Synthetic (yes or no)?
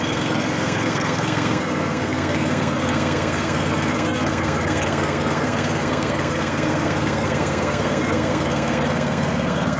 yes